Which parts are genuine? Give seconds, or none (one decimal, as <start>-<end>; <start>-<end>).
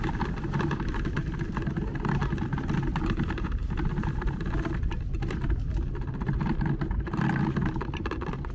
0.0-2.9; 4.5-8.5